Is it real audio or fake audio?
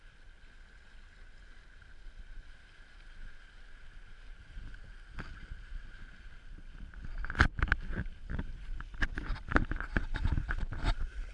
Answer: real